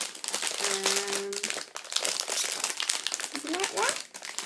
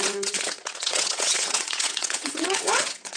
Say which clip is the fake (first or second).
second